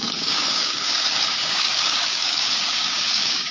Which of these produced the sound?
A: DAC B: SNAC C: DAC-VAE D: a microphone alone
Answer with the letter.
A